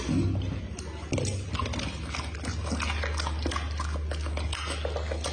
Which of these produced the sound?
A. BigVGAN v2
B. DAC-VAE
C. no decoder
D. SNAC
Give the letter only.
C